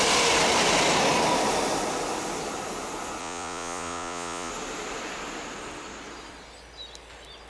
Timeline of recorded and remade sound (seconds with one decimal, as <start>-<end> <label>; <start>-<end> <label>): 0.0-3.2 recorded; 3.2-4.5 remade; 4.5-7.5 recorded